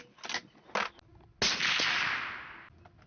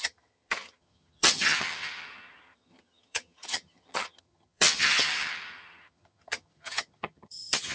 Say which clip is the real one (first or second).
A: first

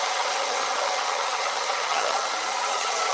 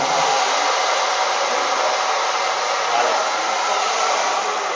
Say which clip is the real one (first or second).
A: second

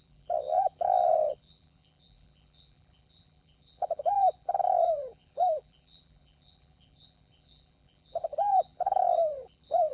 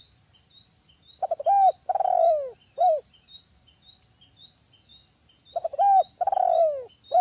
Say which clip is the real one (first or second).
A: second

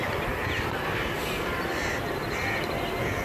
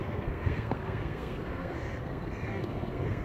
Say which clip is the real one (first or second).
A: first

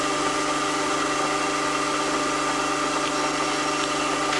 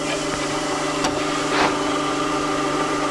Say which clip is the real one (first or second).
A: first